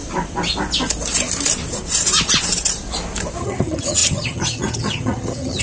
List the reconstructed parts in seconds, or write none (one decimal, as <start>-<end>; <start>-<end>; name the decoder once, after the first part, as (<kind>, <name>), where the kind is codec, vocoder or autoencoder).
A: 3.4-5.6 (vocoder, HiFi-GAN)